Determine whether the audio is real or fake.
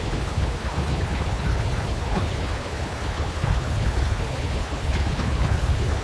fake